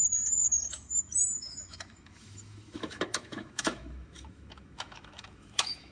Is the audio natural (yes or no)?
no